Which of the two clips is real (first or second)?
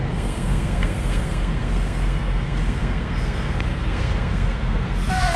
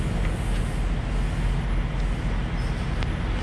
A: second